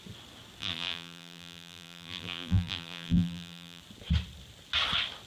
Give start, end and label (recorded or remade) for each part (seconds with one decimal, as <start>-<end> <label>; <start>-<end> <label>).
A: 0.0-0.6 recorded; 0.6-3.8 remade; 3.8-5.3 recorded